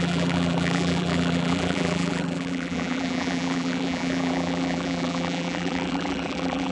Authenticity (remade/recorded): remade